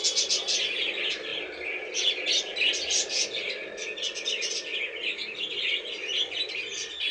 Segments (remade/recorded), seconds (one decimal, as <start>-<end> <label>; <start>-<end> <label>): 0.0-7.1 recorded